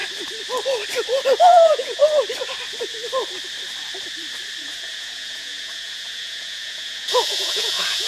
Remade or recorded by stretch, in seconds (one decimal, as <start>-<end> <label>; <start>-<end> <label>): 0.0-1.5 recorded; 1.5-2.0 remade; 2.0-4.6 recorded; 4.6-8.1 remade